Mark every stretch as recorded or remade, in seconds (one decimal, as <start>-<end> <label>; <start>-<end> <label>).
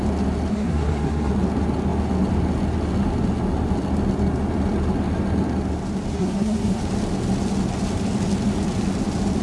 0.0-0.5 recorded; 0.5-1.3 remade; 1.3-6.1 recorded; 6.1-6.8 remade; 6.8-9.4 recorded